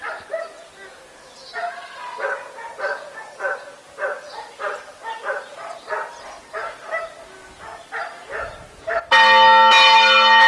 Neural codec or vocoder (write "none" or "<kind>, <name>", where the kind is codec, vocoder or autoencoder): none